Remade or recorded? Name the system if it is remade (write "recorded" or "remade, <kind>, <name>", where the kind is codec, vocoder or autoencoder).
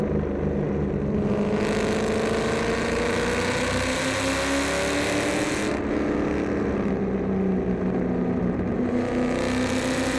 recorded